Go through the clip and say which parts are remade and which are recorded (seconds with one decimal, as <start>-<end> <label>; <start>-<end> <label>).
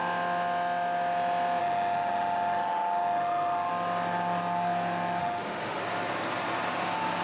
0.0-1.6 recorded; 1.6-3.7 remade; 3.7-5.2 recorded; 5.2-5.8 remade; 5.8-7.2 recorded